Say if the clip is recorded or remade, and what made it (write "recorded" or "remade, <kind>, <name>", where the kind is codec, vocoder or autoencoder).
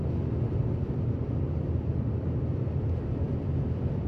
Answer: recorded